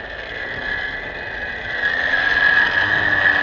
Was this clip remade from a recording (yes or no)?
no